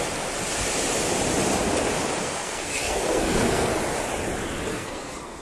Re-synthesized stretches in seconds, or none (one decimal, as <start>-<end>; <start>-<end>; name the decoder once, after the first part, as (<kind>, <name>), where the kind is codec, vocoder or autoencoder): 2.2-3.7 (codec, SNAC); 4.7-5.4